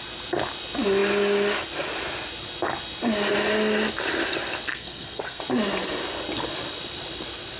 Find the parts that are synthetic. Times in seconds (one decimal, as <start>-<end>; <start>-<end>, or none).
4.7-5.4